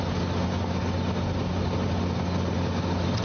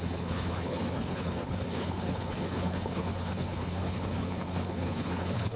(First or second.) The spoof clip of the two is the second